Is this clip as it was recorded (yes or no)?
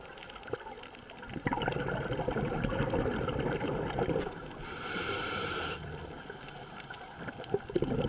no